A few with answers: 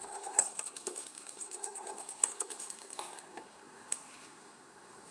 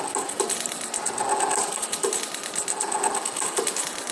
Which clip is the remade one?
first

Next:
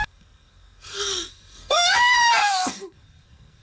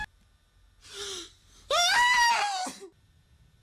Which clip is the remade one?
first